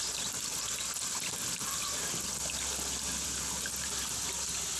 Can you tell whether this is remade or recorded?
recorded